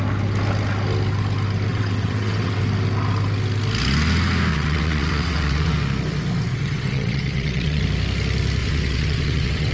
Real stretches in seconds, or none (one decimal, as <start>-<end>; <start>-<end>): 0.0-1.7; 2.6-4.5; 5.7-6.5; 7.8-8.6